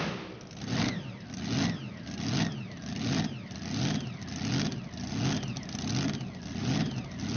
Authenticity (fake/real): real